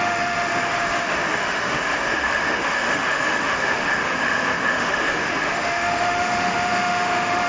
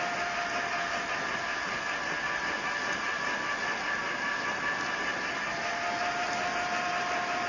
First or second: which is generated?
first